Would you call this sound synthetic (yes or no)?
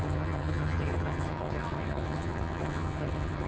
yes